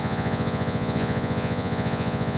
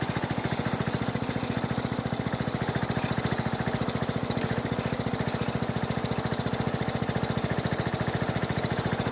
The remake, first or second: first